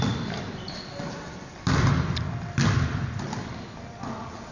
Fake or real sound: real